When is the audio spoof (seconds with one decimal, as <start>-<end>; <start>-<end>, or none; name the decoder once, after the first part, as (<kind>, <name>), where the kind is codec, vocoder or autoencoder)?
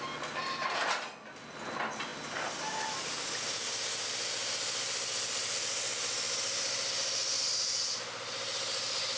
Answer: none